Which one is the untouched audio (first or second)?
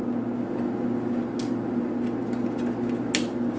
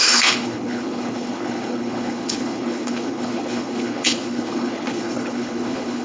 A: first